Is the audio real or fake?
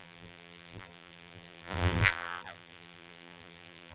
fake